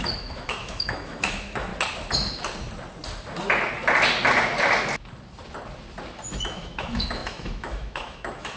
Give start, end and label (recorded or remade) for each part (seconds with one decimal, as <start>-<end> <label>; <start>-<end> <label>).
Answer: 0.0-1.7 remade; 1.7-6.3 recorded; 6.3-8.6 remade